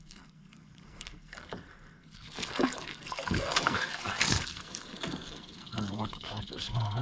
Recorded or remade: remade